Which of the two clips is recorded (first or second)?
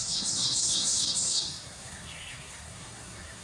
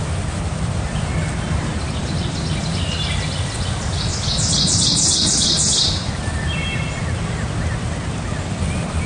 second